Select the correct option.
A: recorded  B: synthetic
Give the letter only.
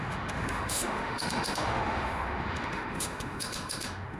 B